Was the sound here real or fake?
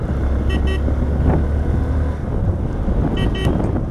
real